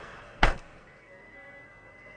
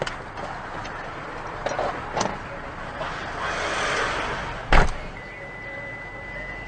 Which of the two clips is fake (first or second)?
first